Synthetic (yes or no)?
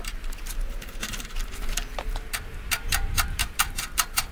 yes